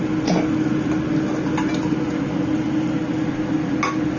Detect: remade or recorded recorded